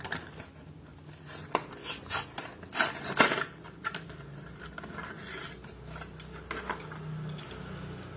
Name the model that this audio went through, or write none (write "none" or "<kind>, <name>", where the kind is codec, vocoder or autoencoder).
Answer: none